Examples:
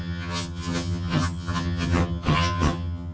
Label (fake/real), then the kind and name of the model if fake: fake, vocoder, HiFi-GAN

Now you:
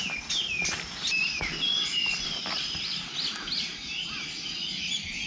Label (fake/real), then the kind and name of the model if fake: real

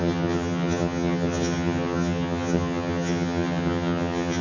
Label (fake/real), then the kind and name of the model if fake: fake, vocoder, HiFi-GAN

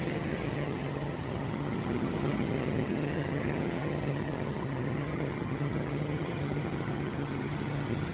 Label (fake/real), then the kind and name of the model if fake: fake, vocoder, HiFi-GAN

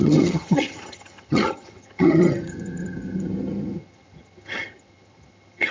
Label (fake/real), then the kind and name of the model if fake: fake, vocoder, HiFi-GAN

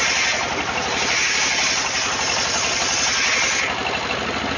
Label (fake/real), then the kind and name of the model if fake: real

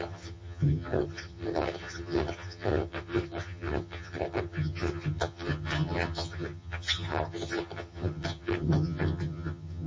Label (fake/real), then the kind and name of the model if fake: fake, vocoder, HiFi-GAN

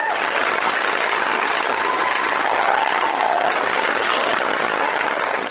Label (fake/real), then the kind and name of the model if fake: fake, vocoder, HiFi-GAN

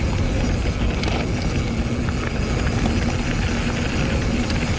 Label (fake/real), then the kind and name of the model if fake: real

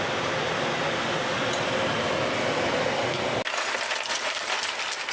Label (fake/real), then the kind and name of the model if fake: real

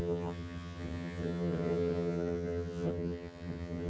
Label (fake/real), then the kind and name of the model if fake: fake, vocoder, HiFi-GAN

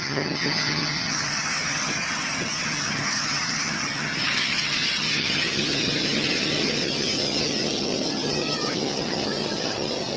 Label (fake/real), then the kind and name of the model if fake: fake, vocoder, HiFi-GAN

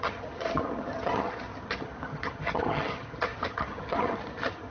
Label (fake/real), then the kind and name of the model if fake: fake, vocoder, HiFi-GAN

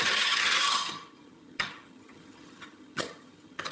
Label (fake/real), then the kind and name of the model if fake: fake, vocoder, HiFi-GAN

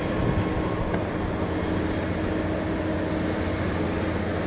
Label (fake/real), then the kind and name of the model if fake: real